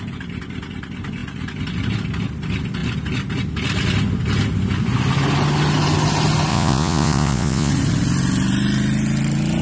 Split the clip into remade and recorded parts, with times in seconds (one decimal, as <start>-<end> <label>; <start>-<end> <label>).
0.0-6.5 recorded; 6.5-7.7 remade; 7.7-9.6 recorded

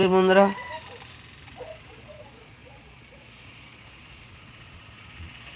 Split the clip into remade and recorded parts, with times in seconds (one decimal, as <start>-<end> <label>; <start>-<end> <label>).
0.0-1.6 recorded; 1.6-5.6 remade

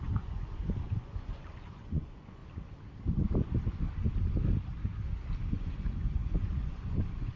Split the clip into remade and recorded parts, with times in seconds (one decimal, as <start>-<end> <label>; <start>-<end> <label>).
0.0-2.4 remade; 2.4-5.5 recorded; 5.5-7.4 remade

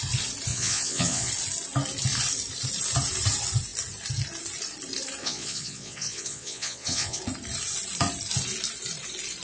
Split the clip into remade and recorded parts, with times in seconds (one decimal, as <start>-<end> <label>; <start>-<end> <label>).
0.0-0.5 recorded; 0.5-1.3 remade; 1.3-5.2 recorded; 5.2-7.2 remade; 7.2-9.4 recorded

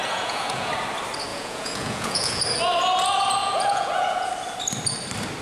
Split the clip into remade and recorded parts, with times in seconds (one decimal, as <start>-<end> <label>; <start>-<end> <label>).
0.0-0.7 remade; 0.7-1.3 recorded; 1.3-2.4 remade; 2.4-3.4 recorded; 3.4-4.3 remade; 4.3-5.4 recorded

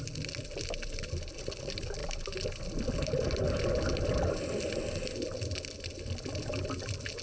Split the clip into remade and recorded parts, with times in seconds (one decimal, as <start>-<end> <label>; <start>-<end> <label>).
0.0-7.2 recorded